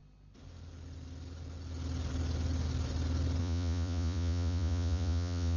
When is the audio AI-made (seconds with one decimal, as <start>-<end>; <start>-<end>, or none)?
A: 3.4-5.6